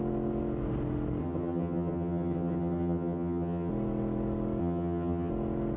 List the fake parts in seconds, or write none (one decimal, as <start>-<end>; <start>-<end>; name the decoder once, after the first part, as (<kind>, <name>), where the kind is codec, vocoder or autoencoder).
1.2-3.7 (vocoder, HiFi-GAN); 4.6-5.3